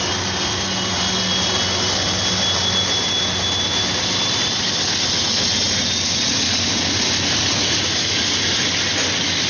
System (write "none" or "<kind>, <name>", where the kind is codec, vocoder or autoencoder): none